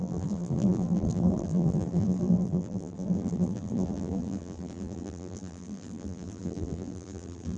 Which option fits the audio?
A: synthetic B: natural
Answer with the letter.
A